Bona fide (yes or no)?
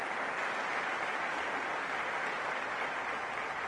yes